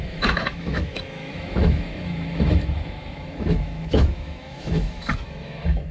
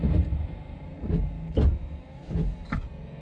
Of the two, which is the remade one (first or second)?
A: first